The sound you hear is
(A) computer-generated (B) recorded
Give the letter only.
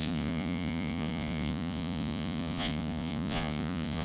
A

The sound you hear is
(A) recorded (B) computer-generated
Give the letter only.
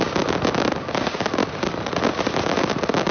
A